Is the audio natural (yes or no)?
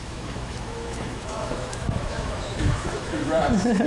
no